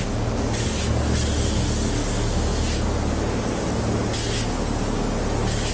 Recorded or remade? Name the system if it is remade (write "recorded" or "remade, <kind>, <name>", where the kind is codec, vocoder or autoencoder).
recorded